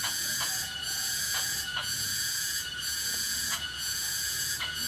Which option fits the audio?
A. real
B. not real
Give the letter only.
B